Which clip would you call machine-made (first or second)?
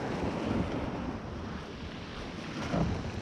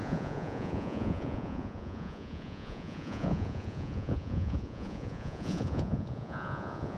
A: second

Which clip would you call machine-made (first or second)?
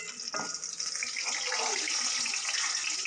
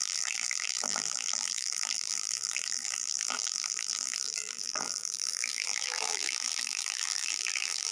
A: second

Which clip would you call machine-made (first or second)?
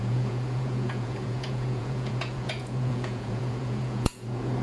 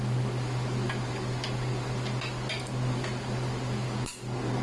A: first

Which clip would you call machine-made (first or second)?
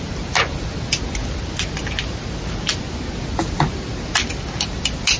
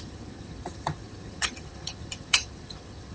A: second